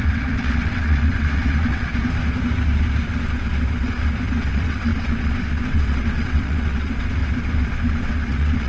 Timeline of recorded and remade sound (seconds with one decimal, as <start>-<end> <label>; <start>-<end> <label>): 0.0-1.9 remade; 1.9-4.4 recorded; 4.4-7.2 remade; 7.2-7.9 recorded; 7.9-8.7 remade